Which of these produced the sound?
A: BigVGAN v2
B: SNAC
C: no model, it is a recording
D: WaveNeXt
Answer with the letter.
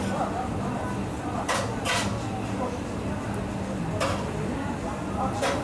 C